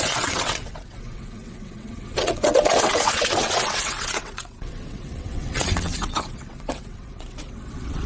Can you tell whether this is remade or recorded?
remade